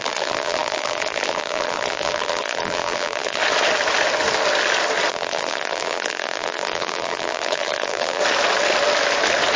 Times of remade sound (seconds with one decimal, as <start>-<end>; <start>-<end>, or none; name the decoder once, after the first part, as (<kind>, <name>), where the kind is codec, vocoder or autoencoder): 0.0-3.4 (vocoder, BigVGAN v2); 5.1-8.2